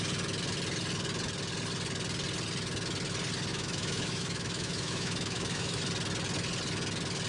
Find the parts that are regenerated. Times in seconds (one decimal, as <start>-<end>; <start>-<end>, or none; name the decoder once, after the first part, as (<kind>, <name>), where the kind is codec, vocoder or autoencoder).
3.5-5.8 (autoencoder, DAC-VAE)